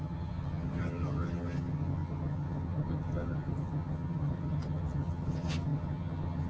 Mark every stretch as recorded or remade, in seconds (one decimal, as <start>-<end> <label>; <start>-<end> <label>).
0.0-6.5 remade